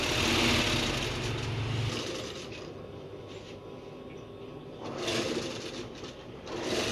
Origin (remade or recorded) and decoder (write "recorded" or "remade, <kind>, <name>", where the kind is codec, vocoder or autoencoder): recorded